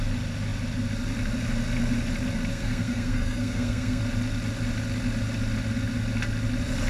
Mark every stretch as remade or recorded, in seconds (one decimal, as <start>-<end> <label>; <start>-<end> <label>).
0.0-2.5 recorded; 2.5-4.0 remade; 4.0-6.9 recorded